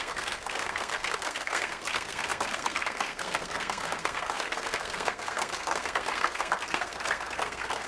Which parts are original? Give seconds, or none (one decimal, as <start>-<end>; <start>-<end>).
none